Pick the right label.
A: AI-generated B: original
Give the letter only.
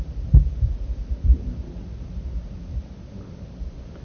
B